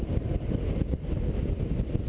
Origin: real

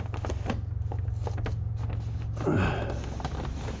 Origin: real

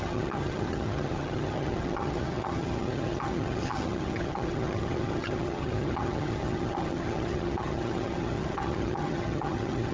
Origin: fake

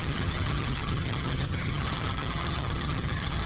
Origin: fake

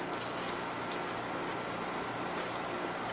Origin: real